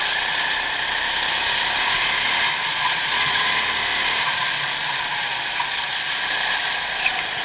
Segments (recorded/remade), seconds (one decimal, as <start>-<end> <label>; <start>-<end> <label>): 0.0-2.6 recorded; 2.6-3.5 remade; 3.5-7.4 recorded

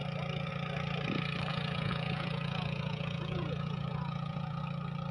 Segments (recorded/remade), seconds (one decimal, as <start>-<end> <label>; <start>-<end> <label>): 0.0-1.5 recorded; 1.5-4.6 remade; 4.6-5.1 recorded

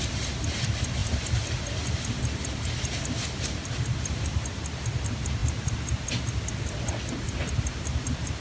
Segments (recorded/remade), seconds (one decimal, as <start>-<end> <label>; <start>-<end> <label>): 0.0-8.4 recorded